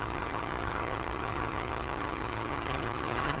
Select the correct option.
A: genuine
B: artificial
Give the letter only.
B